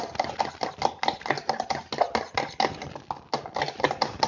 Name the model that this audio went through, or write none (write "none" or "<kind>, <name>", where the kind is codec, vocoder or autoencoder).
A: none